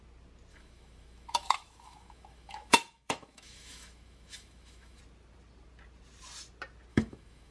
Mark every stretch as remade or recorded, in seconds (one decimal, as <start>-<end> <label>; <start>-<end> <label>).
0.0-0.5 recorded; 0.5-5.0 remade; 5.0-6.9 recorded; 6.9-7.5 remade